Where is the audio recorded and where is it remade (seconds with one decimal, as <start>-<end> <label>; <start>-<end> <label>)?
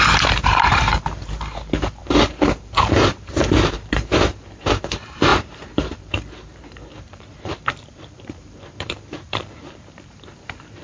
0.0-10.8 remade